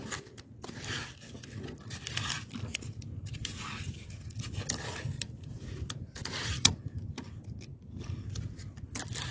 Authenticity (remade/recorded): recorded